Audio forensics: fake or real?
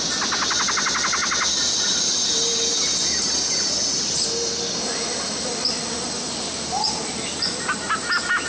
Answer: real